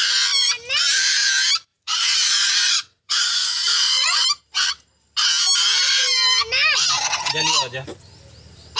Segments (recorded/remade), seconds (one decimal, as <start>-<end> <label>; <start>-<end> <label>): 0.0-1.7 recorded; 1.7-4.2 remade; 4.2-8.8 recorded